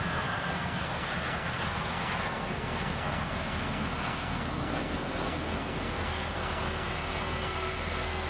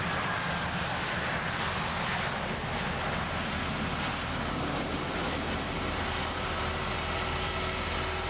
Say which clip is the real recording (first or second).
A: second